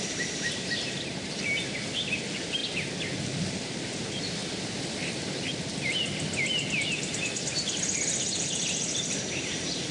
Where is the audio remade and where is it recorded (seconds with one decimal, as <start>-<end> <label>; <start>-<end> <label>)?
0.0-2.6 remade; 2.6-3.2 recorded; 3.2-4.4 remade; 4.4-9.4 recorded; 9.4-9.9 remade